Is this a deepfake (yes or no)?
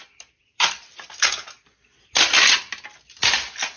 no